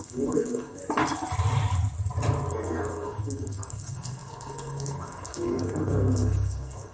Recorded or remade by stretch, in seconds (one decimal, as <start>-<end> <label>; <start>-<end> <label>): 0.0-0.8 remade; 0.8-2.5 recorded; 2.5-6.9 remade